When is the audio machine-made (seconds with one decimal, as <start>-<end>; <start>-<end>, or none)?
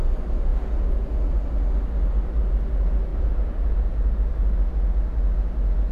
3.1-4.7